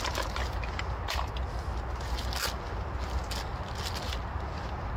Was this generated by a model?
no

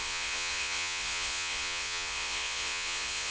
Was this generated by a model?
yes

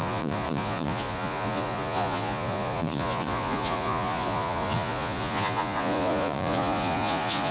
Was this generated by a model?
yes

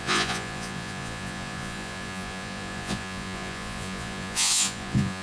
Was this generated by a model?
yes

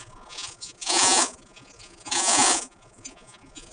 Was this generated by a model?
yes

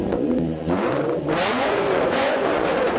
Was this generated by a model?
yes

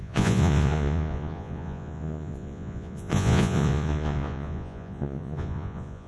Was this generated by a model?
yes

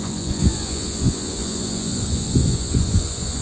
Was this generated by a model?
yes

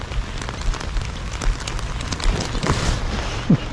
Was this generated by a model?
no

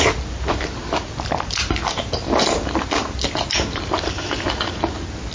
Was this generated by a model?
no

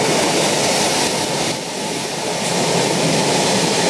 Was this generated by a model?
no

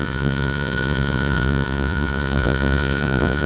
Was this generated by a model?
yes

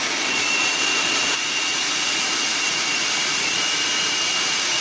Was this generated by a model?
yes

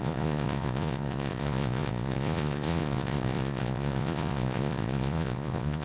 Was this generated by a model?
yes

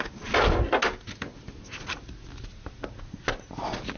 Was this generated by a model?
no